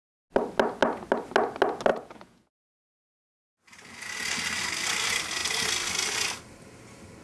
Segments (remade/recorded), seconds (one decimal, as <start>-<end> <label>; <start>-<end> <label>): 0.0-1.9 recorded; 1.9-2.6 remade; 2.6-7.2 recorded